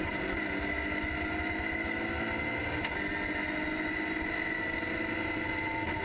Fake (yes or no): no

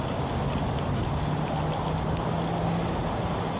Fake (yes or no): no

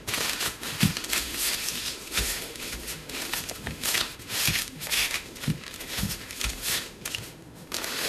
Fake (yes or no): yes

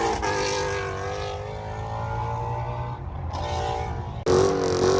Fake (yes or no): no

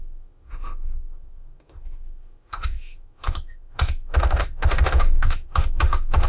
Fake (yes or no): yes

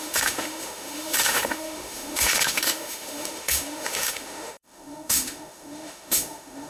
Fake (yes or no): yes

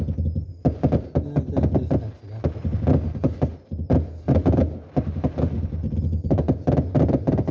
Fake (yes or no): no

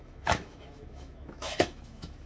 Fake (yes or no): yes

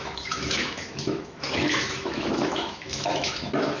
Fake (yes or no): yes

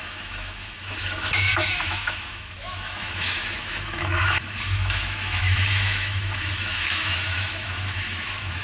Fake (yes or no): yes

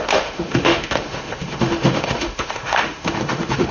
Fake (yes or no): yes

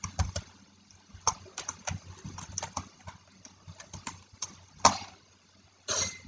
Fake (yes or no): no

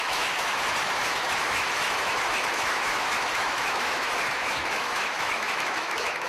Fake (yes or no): yes